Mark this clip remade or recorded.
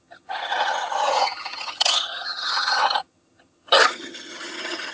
remade